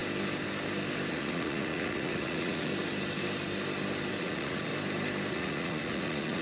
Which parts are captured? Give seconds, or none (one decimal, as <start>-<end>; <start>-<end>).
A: 0.0-1.1; 2.7-4.2; 4.7-5.3